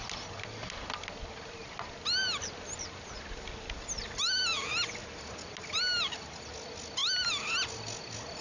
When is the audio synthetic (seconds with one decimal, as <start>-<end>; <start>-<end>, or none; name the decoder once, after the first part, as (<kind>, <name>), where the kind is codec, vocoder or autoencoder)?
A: none